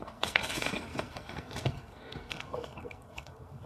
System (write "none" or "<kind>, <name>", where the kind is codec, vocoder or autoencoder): codec, SNAC